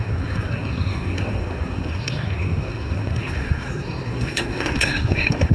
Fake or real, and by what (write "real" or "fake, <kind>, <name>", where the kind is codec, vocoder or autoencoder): fake, codec, SNAC